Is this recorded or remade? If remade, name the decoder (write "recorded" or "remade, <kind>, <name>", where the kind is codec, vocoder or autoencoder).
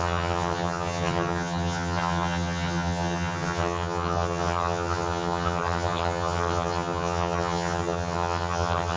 remade, vocoder, HiFi-GAN